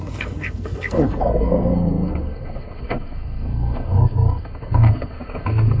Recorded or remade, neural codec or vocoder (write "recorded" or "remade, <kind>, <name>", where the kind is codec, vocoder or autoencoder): remade, codec, SNAC